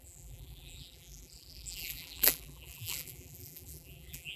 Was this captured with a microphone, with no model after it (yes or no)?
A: no